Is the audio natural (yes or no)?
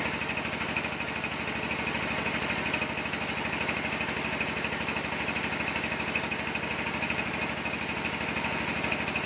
yes